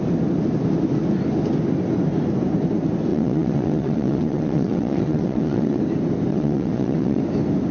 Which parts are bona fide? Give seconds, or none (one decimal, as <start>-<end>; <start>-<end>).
0.0-3.1; 5.8-6.3; 7.2-7.7